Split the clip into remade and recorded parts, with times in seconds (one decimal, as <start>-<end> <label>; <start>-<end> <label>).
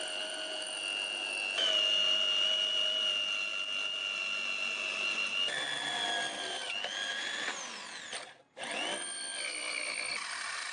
0.0-10.7 recorded